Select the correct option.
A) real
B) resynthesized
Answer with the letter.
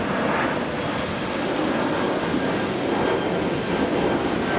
A